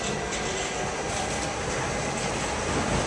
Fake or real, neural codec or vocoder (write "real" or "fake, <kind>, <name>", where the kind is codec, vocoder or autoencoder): real